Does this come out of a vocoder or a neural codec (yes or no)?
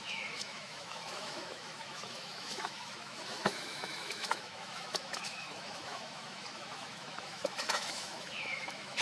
yes